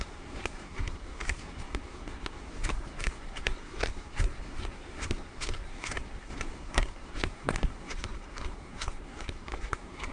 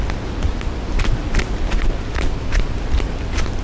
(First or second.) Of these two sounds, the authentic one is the second